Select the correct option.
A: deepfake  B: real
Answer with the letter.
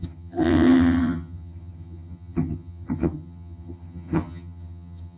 A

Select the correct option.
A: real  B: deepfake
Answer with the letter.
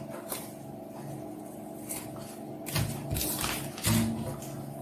A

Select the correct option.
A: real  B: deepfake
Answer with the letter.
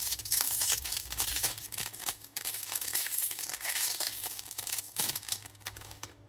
B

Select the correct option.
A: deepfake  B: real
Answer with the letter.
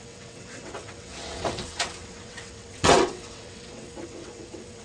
A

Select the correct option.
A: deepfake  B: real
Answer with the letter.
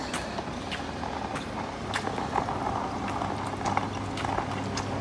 B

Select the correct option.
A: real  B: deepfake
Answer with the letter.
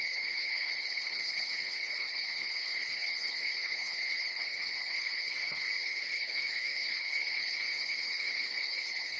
B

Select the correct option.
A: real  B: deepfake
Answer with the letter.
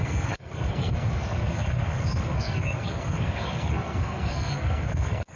B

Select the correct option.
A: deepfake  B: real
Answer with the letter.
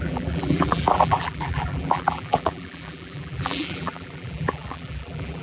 A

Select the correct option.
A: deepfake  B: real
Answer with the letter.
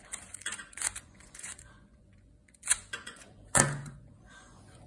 A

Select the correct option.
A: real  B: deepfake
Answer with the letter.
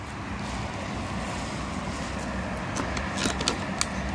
A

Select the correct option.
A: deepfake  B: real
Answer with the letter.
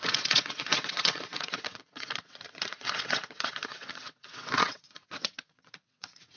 A